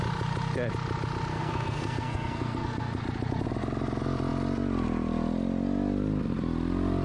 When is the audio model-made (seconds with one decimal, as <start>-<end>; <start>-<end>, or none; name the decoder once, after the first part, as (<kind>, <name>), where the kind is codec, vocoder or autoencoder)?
1.3-3.0 (codec, SNAC)

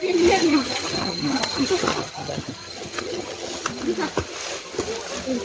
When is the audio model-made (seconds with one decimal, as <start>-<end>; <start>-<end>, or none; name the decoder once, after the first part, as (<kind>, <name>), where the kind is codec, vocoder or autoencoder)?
0.5-3.7 (vocoder, HiFi-GAN)